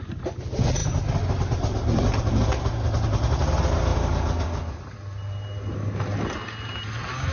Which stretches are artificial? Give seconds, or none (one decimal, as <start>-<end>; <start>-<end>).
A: none